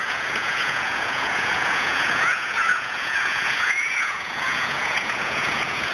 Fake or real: fake